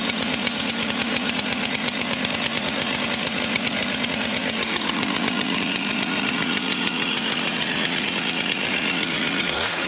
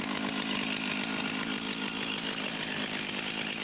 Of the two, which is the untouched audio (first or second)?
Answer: second